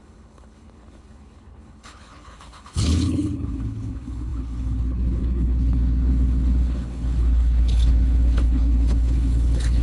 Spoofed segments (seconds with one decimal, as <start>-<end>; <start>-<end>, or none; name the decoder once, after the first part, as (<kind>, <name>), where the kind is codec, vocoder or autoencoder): 0.0-9.8 (codec, HILCodec)